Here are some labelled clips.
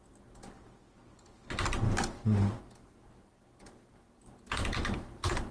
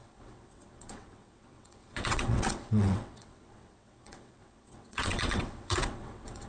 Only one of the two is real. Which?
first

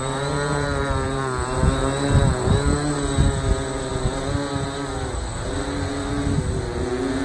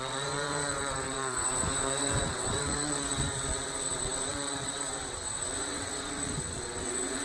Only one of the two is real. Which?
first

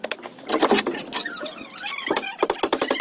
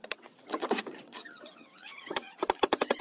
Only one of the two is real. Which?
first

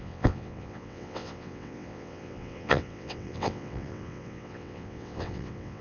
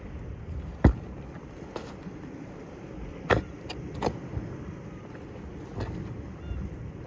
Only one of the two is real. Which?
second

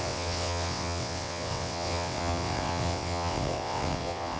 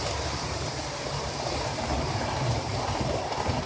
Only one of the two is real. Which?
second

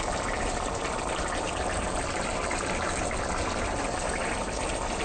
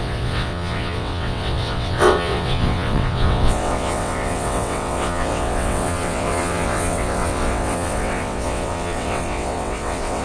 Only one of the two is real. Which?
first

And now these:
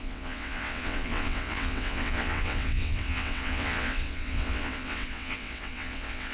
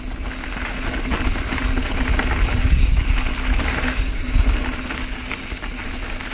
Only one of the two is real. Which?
second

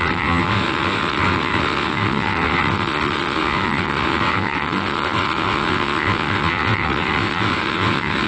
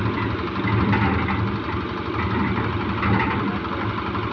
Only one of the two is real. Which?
second